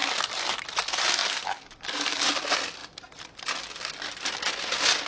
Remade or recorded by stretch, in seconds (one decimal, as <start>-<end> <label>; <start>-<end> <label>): 0.0-0.6 remade; 0.6-1.2 recorded; 1.2-2.3 remade; 2.3-5.1 recorded